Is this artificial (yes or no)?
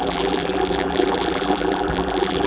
yes